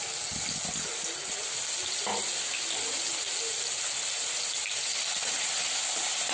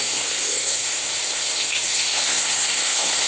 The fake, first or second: second